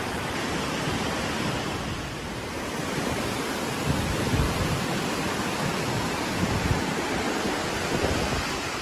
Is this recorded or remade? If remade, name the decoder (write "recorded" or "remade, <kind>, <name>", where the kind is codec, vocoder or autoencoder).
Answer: recorded